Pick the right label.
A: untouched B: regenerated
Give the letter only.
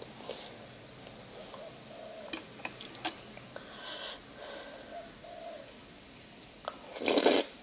A